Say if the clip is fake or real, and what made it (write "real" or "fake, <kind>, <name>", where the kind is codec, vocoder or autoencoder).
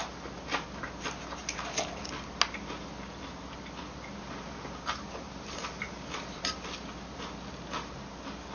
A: real